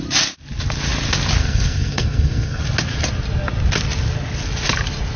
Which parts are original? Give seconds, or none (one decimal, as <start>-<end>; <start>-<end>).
0.0-1.4; 2.6-5.2